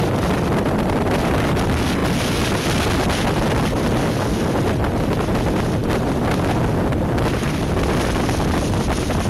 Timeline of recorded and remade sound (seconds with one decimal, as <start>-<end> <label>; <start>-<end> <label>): 0.0-9.3 recorded